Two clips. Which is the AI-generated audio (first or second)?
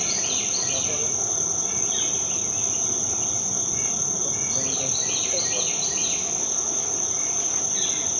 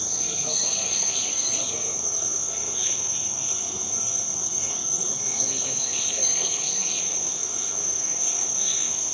second